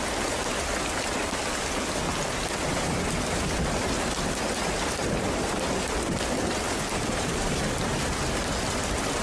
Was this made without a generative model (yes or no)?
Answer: yes